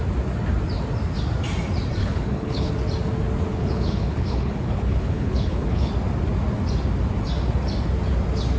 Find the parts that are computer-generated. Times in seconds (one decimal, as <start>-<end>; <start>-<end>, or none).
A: 2.0-2.7; 3.5-5.9